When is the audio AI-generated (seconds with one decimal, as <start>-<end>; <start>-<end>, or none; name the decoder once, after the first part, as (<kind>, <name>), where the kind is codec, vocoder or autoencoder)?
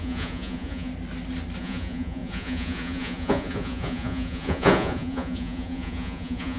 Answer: 0.0-0.9 (vocoder, Vocos); 1.6-6.6